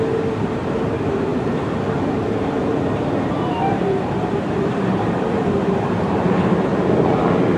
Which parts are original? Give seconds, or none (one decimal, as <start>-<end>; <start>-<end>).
6.7-7.6